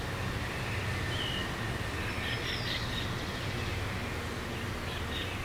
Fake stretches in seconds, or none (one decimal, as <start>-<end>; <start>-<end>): none